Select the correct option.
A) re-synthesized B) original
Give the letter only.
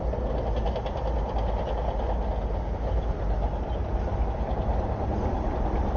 B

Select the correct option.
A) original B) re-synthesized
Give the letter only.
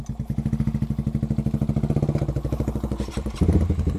A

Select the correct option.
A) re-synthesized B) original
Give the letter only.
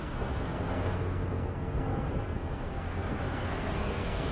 A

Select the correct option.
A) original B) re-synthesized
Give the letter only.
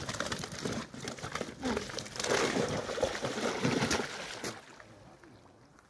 A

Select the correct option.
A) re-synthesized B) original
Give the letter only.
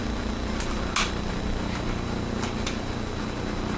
B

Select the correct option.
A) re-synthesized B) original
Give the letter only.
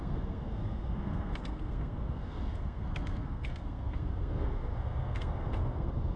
A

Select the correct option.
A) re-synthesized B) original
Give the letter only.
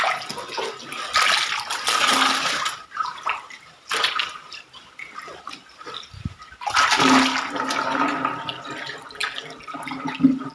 B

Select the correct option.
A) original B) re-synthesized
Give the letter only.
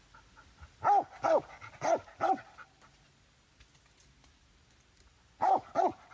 A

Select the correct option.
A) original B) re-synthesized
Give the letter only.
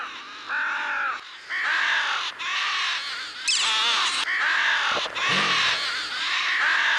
A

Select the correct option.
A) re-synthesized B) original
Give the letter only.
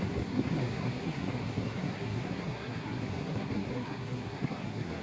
A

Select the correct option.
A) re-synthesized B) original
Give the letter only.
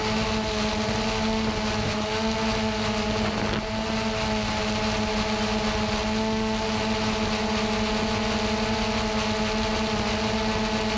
B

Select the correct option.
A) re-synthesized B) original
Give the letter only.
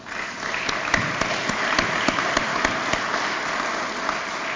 B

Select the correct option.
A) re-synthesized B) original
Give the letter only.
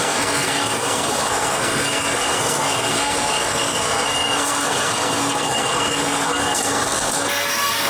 A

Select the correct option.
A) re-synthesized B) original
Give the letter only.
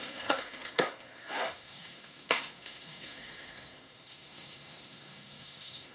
A